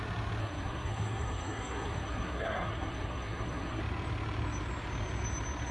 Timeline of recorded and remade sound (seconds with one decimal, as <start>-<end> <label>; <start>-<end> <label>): 0.0-0.4 recorded; 0.4-3.8 remade; 3.8-5.7 recorded